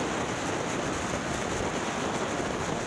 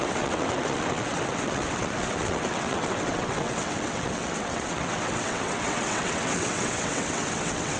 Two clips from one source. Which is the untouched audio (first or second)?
first